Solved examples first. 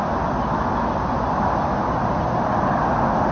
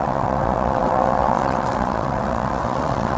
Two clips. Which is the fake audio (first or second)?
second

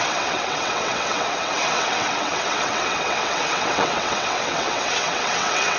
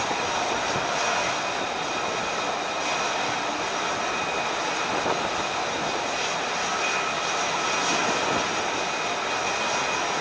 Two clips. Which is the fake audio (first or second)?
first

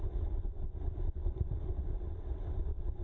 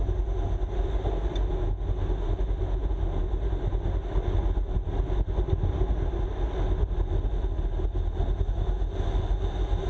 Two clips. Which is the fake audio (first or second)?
first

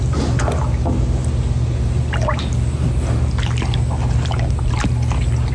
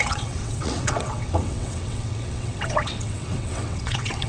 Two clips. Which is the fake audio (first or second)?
second